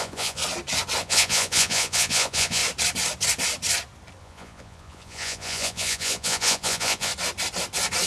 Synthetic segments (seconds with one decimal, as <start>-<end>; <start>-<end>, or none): 0.0-0.4; 1.0-2.6; 4.2-7.1